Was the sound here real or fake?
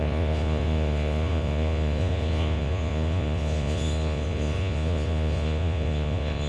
fake